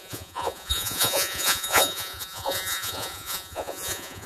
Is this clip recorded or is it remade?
remade